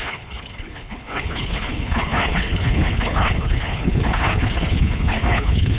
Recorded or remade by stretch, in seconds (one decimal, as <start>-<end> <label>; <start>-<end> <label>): 0.0-5.8 remade